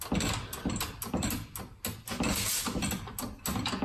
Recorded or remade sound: recorded